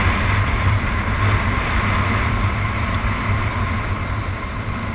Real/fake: real